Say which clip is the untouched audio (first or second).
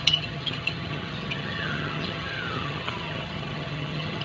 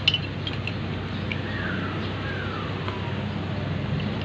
second